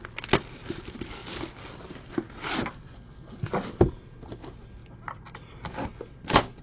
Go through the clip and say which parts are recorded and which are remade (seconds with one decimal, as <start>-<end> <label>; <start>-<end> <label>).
0.0-1.2 recorded; 1.2-3.7 remade; 3.7-6.6 recorded

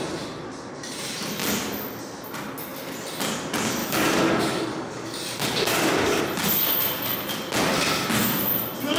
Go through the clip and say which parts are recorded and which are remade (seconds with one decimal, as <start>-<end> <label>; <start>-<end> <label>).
0.0-3.8 recorded; 3.8-6.2 remade; 6.2-9.0 recorded

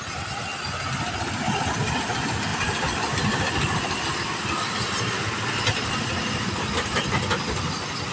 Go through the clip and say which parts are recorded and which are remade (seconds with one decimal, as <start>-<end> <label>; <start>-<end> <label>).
0.0-0.5 remade; 0.5-1.4 recorded; 1.4-8.1 remade

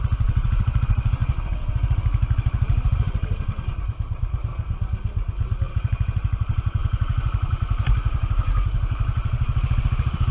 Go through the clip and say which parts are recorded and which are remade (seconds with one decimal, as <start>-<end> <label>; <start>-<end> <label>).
0.0-1.2 remade; 1.2-1.7 recorded; 1.7-4.5 remade; 4.5-5.7 recorded; 5.7-10.3 remade